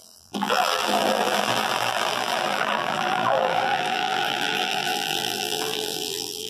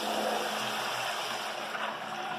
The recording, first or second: second